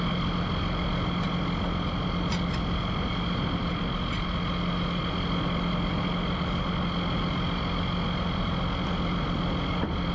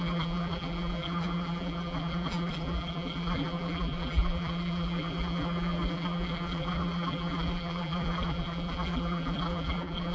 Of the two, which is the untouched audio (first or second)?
first